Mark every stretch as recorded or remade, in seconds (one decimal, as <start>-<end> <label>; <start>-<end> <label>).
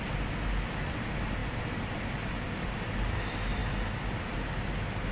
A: 0.0-5.1 recorded